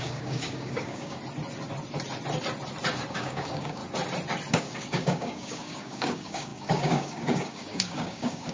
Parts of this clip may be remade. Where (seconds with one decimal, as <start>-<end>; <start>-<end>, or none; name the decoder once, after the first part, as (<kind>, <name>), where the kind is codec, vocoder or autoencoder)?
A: 0.0-1.2 (codec, DAC); 3.1-3.8; 4.5-8.5